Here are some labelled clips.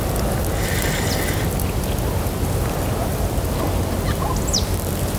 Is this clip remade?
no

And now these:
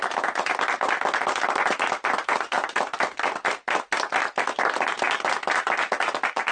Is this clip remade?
no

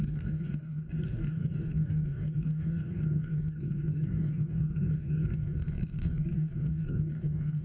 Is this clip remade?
yes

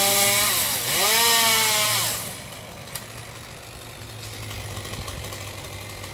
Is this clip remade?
no